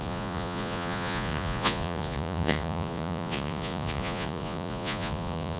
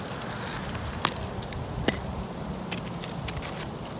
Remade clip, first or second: first